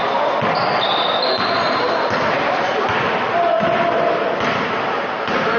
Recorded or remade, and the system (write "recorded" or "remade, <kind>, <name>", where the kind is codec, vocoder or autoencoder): recorded